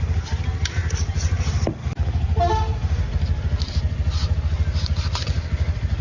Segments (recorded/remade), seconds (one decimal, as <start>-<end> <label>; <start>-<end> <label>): 0.0-6.0 recorded